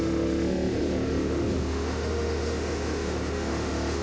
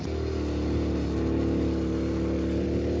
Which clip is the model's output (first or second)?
first